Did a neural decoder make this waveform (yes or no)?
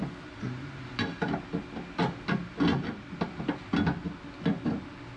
no